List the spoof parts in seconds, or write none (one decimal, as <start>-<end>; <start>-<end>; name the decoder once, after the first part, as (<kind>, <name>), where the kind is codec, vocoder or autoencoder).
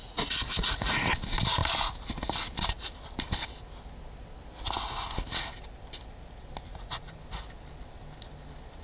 0.0-1.1 (vocoder, Vocos); 6.7-7.2